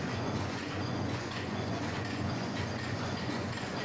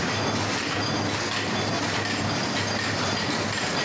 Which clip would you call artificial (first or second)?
first